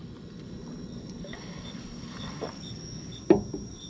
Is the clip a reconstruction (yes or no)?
no